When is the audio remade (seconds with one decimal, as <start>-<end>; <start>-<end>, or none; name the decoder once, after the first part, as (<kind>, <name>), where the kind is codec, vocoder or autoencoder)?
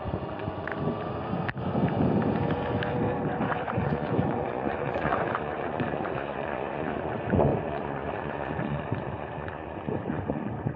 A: 0.0-0.7 (vocoder, Vocos); 3.7-10.8